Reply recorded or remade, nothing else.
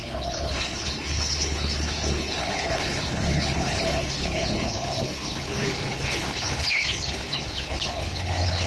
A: remade